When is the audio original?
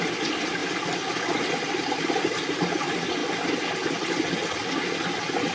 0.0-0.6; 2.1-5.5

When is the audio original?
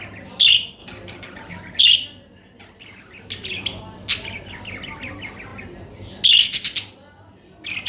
0.0-0.8; 1.8-7.9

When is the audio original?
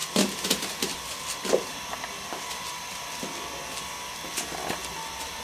3.2-5.4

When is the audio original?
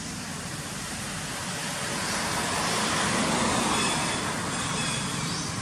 1.6-4.7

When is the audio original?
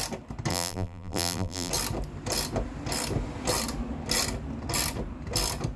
0.0-0.5; 1.7-5.8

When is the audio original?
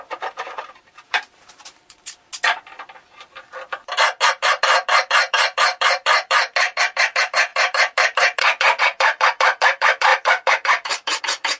2.3-4.3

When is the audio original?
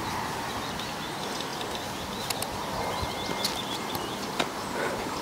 0.0-5.2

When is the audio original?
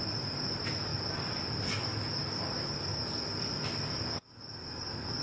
0.9-2.2; 2.9-3.5